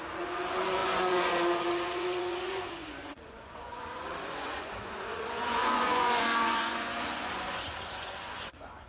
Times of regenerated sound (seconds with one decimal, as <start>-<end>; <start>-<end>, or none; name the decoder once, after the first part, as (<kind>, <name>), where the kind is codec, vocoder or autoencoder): 0.0-8.9 (vocoder, Vocos)